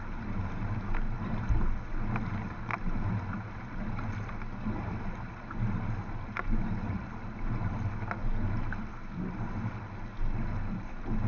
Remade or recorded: recorded